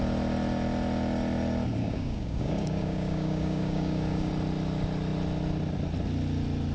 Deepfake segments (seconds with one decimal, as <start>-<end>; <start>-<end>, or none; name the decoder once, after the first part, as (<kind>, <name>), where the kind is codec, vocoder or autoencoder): 1.8-4.3 (codec, DAC)